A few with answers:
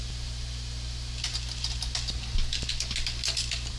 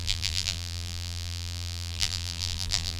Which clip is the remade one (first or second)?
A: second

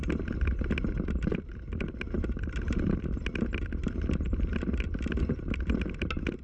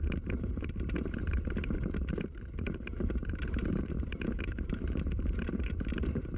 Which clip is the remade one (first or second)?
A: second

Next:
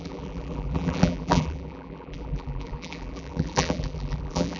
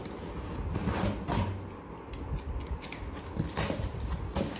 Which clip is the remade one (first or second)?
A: first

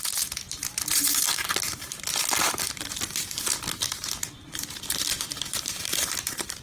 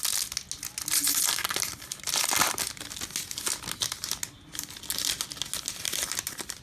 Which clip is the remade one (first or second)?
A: first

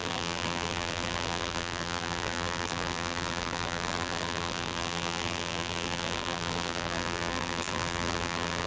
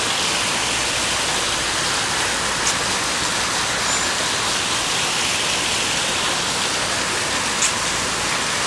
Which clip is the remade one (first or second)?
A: first